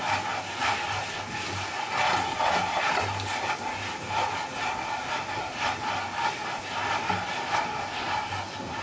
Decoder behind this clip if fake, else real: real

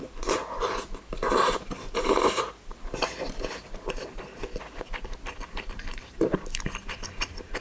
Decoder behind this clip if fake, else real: real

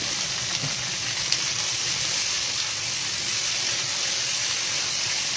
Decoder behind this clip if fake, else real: fake, vocoder, BigVGAN v2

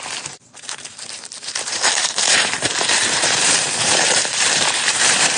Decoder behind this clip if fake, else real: fake, vocoder, BigVGAN v2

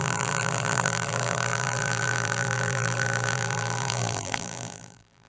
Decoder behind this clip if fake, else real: fake, vocoder, BigVGAN v2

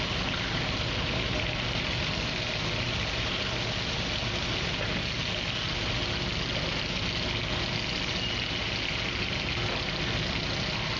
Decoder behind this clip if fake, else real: real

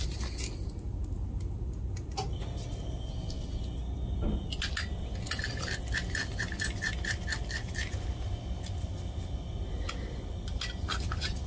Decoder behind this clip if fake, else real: real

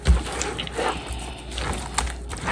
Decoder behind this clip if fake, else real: real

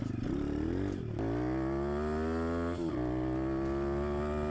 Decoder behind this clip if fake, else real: real